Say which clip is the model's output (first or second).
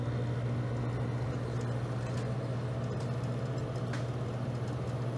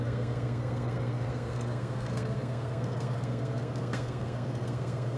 second